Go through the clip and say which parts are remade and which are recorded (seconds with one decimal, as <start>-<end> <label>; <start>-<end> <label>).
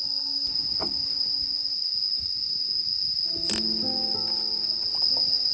0.0-5.5 recorded